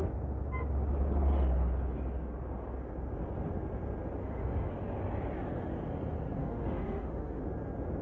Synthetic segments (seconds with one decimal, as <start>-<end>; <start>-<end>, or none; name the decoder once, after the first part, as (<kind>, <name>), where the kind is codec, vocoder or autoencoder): 4.2-4.7 (autoencoder, DAC-VAE); 6.4-7.4

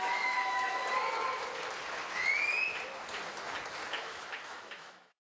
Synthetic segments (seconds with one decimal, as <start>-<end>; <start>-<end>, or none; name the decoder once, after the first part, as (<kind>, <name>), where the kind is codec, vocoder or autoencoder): 0.0-0.8 (autoencoder, DAC-VAE); 3.9-5.2

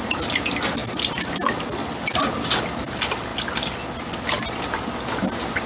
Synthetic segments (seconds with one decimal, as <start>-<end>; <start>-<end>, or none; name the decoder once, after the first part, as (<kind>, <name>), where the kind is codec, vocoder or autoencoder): none

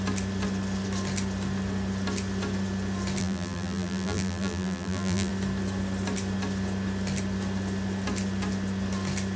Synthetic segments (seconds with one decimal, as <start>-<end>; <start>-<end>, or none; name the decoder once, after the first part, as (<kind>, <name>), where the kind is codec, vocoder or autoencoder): 3.2-5.3 (vocoder, BigVGAN v2)

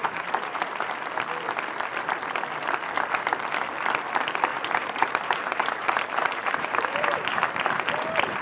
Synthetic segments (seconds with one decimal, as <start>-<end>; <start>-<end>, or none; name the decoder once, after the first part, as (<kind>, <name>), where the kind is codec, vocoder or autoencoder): 0.0-0.9 (vocoder, BigVGAN v2); 4.5-7.6

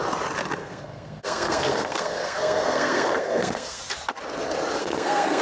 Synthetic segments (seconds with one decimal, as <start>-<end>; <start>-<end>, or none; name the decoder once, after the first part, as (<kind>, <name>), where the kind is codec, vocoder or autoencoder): 0.6-3.8 (codec, SNAC); 4.8-5.4